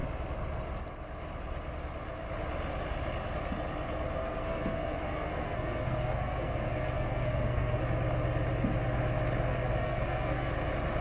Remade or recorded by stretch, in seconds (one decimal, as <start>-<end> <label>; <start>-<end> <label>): 0.0-4.2 recorded; 4.2-7.8 remade; 7.8-9.5 recorded; 9.5-10.5 remade; 10.5-11.0 recorded